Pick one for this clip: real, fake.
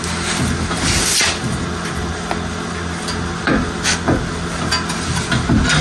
real